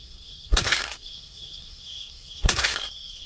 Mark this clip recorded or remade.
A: remade